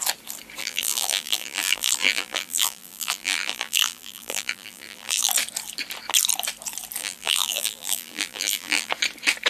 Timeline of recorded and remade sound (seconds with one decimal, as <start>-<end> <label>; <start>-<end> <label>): 0.0-0.6 recorded; 0.6-5.3 remade; 5.3-7.0 recorded; 7.0-8.9 remade; 8.9-9.5 recorded